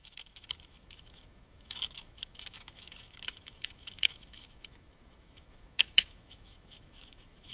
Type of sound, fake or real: fake